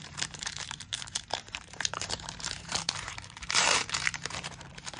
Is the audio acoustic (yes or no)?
no